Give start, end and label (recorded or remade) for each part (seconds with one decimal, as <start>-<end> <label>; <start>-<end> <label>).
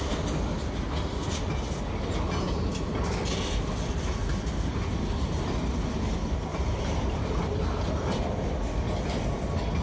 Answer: 0.0-6.5 recorded; 6.5-7.9 remade; 7.9-9.8 recorded